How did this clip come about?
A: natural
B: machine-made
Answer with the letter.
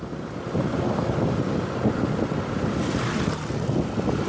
A